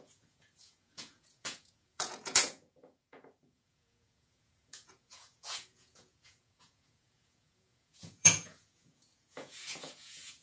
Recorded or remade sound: remade